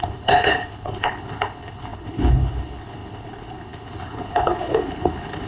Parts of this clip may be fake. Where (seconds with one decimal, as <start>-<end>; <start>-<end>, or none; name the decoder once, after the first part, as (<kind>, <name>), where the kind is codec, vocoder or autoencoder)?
0.0-5.5 (codec, HILCodec)

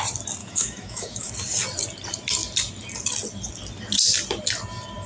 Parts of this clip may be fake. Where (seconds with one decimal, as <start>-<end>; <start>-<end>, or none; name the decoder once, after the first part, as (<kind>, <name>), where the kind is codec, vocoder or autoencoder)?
0.4-1.3 (autoencoder, DAC-VAE)

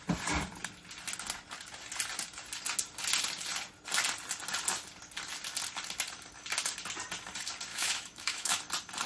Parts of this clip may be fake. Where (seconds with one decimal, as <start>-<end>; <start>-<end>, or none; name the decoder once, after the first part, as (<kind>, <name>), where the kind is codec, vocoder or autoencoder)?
7.7-8.6 (autoencoder, DAC-VAE)

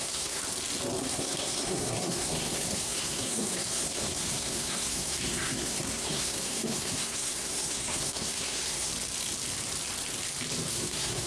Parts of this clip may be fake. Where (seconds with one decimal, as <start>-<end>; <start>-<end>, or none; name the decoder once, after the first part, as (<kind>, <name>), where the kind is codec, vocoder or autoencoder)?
0.0-0.4 (codec, SNAC); 1.0-8.9; 10.7-11.3

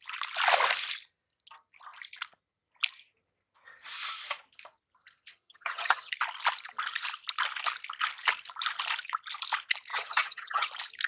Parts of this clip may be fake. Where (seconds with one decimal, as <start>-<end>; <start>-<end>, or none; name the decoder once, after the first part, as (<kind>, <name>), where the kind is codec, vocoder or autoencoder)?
5.3-6.1 (vocoder, HiFi-GAN); 9.9-10.7